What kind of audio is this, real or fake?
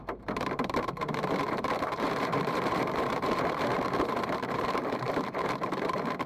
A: fake